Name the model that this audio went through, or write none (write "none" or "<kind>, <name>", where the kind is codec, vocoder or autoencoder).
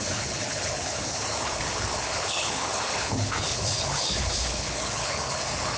codec, HILCodec